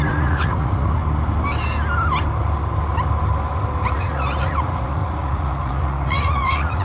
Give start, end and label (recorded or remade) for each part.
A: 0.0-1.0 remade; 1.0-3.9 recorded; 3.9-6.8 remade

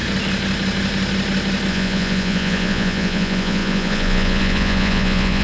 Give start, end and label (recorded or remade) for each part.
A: 0.0-1.7 recorded; 1.7-5.4 remade

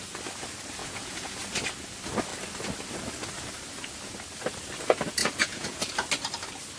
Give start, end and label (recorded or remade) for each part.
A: 0.0-0.8 recorded; 0.8-1.4 remade; 1.4-5.2 recorded; 5.2-5.9 remade; 5.9-6.8 recorded

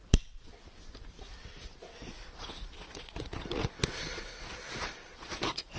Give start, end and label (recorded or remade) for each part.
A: 0.0-0.5 remade; 0.5-2.4 recorded; 2.4-5.8 remade

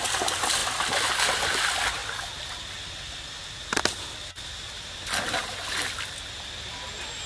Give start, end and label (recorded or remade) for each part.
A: 0.0-7.3 recorded

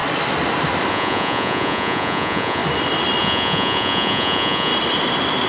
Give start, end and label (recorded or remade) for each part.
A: 0.0-0.9 recorded; 0.9-2.6 remade; 2.6-3.2 recorded; 3.2-4.7 remade; 4.7-5.5 recorded

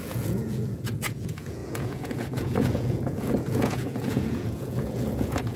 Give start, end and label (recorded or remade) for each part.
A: 0.0-5.6 remade

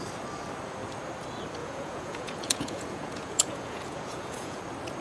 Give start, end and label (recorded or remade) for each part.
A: 0.0-1.6 recorded; 1.6-4.6 remade; 4.6-5.0 recorded